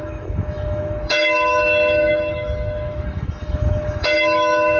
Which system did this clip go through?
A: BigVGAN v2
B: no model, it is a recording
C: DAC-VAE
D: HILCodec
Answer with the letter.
C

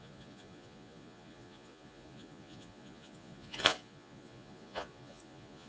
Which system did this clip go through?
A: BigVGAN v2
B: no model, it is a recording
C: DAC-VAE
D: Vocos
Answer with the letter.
D